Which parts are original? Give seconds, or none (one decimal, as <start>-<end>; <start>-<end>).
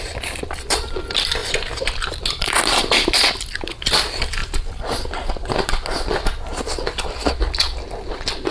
1.4-2.3; 4.4-8.1